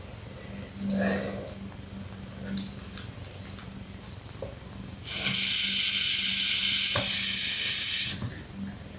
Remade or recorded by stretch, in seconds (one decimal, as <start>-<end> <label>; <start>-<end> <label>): 0.0-9.0 recorded